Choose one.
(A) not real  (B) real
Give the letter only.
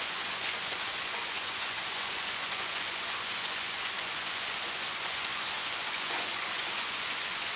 A